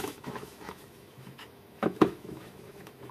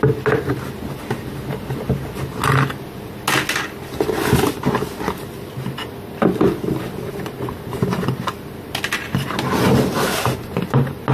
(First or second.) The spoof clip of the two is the first